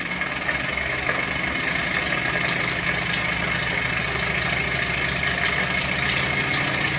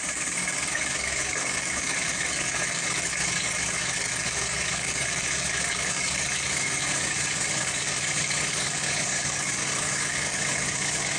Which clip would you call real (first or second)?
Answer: first